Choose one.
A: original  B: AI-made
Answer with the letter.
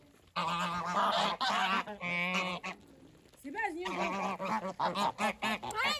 A